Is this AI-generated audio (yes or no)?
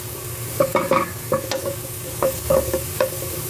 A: yes